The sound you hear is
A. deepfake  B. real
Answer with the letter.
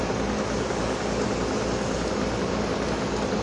B